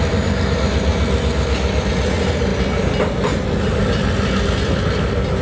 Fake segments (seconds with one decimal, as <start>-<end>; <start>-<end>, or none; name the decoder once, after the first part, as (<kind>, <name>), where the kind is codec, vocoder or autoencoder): none